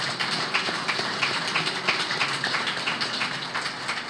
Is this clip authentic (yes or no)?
yes